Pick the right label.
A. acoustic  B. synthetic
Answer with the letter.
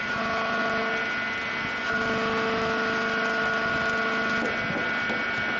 A